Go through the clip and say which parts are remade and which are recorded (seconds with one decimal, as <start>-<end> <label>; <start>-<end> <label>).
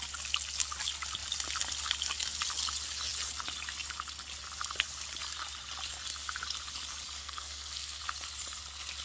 0.0-7.2 recorded; 7.2-8.0 remade; 8.0-9.0 recorded